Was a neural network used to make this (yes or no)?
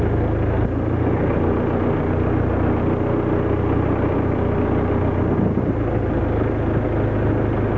no